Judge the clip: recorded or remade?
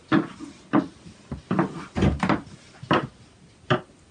recorded